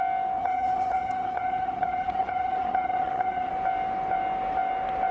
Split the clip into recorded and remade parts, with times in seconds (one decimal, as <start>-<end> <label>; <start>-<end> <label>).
0.0-0.4 recorded; 0.4-3.5 remade; 3.5-5.1 recorded